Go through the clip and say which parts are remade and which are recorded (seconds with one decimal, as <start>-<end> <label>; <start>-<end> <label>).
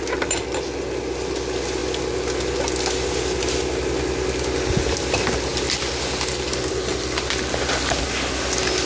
0.0-8.9 recorded